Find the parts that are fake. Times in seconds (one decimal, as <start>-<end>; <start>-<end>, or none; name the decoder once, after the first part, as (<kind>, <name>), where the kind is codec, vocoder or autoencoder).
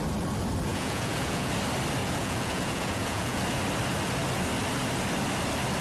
0.7-1.5 (vocoder, Vocos); 2.0-3.4